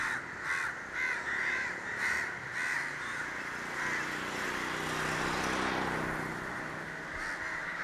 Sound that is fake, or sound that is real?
real